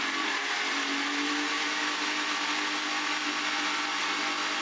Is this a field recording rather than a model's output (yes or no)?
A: yes